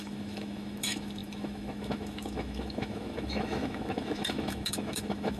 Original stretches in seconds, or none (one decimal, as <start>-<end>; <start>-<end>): none